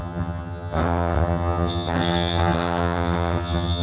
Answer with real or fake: fake